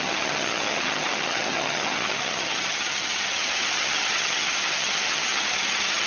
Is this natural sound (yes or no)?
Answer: no